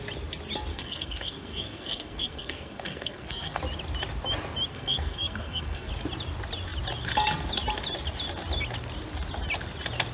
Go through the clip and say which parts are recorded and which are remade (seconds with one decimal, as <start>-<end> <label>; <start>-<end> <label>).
0.0-0.7 recorded; 0.7-3.6 remade; 3.6-4.7 recorded; 4.7-5.9 remade; 5.9-10.1 recorded